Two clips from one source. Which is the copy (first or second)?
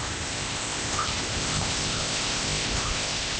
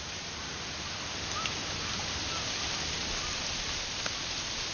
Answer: first